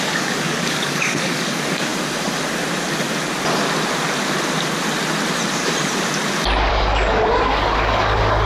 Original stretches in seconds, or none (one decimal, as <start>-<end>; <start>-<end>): 1.9-6.7